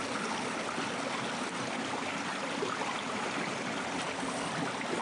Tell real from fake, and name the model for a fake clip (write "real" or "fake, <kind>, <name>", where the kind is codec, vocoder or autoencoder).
real